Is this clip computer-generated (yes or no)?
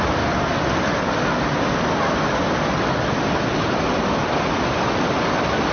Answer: no